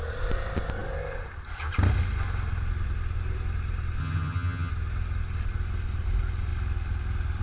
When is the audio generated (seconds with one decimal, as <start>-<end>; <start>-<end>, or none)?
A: 4.0-4.7